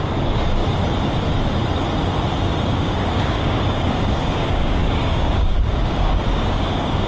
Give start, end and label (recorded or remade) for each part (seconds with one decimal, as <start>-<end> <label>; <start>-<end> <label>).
0.0-0.6 remade; 0.6-2.6 recorded; 2.6-7.1 remade